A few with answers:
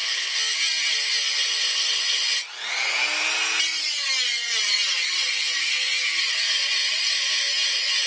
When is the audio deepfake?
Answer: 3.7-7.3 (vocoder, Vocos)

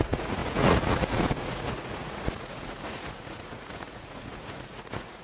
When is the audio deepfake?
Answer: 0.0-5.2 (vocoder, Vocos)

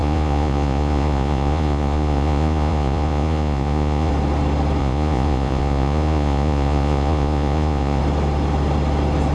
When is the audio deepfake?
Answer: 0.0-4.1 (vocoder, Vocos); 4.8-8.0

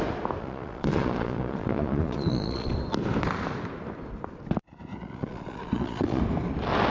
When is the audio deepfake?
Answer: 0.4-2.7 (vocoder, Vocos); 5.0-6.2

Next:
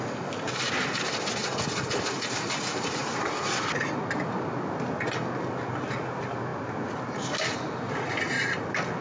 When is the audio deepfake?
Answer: none